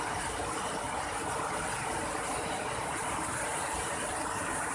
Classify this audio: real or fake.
real